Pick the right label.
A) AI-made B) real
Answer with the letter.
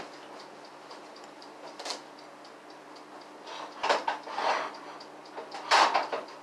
B